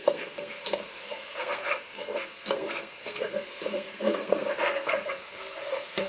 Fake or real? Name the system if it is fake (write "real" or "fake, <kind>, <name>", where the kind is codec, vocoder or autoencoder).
fake, codec, SNAC